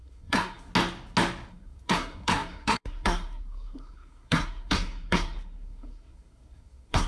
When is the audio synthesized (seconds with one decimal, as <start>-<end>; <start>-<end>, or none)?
0.0-0.7; 1.5-7.1